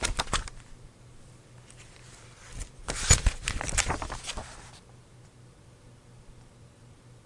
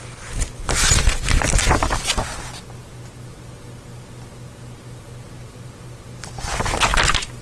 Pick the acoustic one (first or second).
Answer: second